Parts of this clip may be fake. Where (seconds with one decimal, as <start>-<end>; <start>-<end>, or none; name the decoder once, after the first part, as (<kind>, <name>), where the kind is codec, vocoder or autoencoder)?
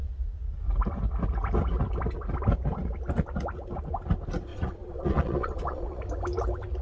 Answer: 4.5-6.0 (vocoder, Vocos)